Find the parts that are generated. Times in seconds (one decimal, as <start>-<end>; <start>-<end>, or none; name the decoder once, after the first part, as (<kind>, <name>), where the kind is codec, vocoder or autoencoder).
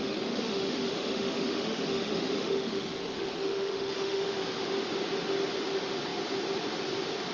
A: 0.0-4.4 (autoencoder, DAC-VAE)